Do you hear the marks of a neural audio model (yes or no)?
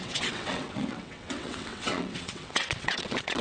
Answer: yes